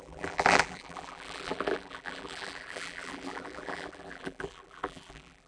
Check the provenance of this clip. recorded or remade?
remade